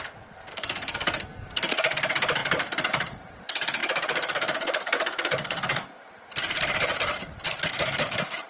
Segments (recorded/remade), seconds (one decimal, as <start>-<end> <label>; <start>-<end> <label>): 0.0-0.5 recorded; 0.5-1.7 remade; 1.7-8.5 recorded

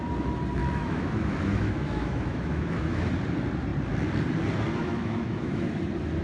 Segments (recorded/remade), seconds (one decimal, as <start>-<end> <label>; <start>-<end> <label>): 0.0-0.6 recorded; 0.6-3.1 remade; 3.1-4.8 recorded; 4.8-5.8 remade; 5.8-6.2 recorded

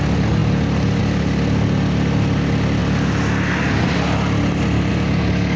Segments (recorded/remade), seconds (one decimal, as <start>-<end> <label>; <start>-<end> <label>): 0.0-5.6 recorded

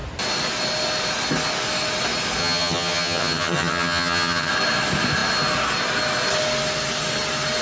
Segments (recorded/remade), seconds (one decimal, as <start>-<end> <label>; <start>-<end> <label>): 0.0-2.4 recorded; 2.4-4.5 remade; 4.5-7.6 recorded